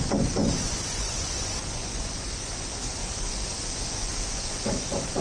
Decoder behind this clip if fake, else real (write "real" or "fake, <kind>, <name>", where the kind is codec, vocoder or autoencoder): fake, vocoder, Vocos